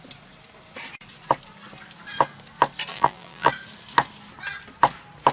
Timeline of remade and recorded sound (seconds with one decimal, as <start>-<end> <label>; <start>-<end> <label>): 0.0-2.9 recorded; 2.9-3.5 remade; 3.5-5.3 recorded